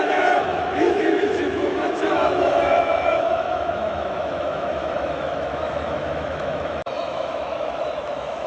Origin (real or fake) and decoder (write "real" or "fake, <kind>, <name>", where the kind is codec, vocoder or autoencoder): fake, autoencoder, DAC-VAE